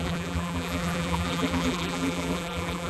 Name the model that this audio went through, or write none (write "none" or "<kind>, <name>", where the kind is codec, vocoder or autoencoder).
vocoder, BigVGAN v2